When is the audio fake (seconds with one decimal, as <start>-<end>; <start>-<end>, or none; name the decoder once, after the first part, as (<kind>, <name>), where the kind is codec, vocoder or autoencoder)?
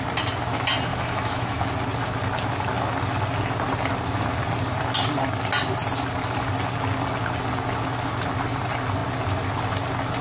0.9-1.6 (autoencoder, DAC-VAE)